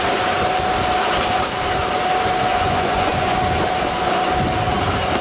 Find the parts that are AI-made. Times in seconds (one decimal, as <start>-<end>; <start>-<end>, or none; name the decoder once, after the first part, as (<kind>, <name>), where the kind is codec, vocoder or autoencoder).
2.5-3.4 (vocoder, Vocos)